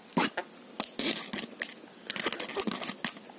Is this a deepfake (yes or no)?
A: no